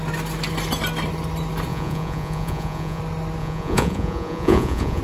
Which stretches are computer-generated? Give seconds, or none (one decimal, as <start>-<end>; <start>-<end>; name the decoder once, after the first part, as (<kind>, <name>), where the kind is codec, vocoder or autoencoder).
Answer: 1.7-3.0 (vocoder, Vocos); 3.4-5.0